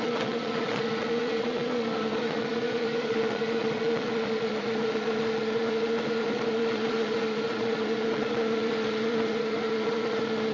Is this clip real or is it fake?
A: fake